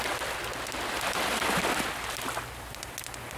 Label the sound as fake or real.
real